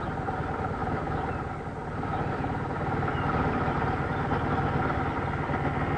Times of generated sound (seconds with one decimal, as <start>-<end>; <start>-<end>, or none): none